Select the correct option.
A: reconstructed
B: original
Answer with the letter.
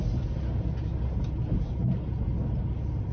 B